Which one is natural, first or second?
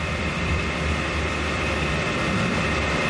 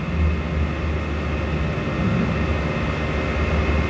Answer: second